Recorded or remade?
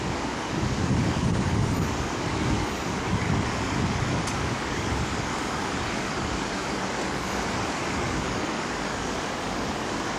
remade